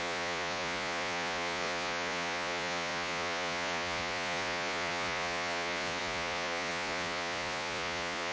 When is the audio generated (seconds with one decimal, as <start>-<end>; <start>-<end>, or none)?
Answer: 0.0-8.3